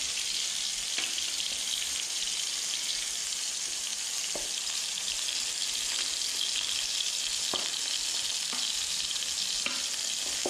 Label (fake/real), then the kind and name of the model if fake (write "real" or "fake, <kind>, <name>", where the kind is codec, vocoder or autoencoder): real